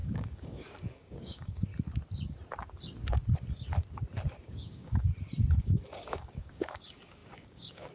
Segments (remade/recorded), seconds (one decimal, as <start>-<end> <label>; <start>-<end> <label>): 0.0-1.7 remade; 1.7-4.4 recorded; 4.4-5.1 remade; 5.1-5.6 recorded; 5.6-7.9 remade